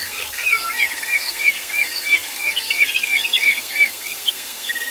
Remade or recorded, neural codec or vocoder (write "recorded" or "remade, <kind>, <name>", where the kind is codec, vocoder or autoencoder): remade, codec, SNAC